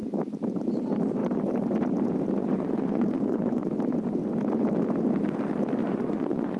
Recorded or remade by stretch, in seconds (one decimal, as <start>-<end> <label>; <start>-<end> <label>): 0.0-2.4 recorded; 2.4-3.7 remade; 3.7-5.8 recorded; 5.8-6.6 remade